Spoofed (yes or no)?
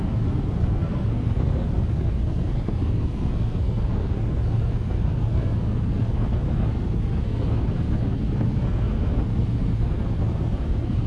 yes